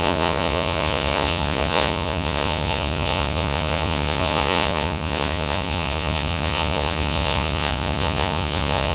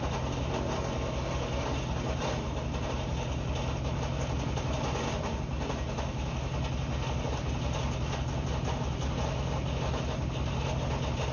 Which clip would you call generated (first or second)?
first